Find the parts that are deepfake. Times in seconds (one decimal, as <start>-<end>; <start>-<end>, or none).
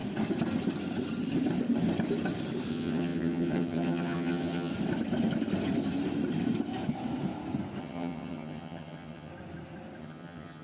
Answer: 2.7-4.7; 7.8-9.3; 10.0-10.6